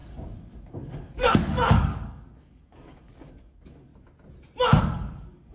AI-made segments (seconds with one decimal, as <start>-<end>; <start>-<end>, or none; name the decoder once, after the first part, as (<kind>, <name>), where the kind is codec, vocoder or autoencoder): 0.0-3.9 (codec, DAC); 4.8-5.5